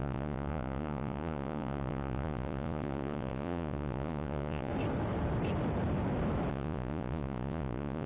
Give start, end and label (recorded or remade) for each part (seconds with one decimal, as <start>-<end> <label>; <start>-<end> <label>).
0.0-4.7 remade; 4.7-6.5 recorded; 6.5-8.1 remade